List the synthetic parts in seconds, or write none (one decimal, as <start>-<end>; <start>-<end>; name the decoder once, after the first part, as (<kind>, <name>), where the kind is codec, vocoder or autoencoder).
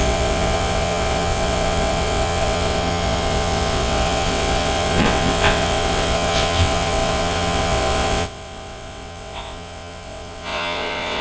0.0-11.2 (vocoder, WaveNeXt)